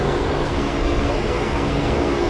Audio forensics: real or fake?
fake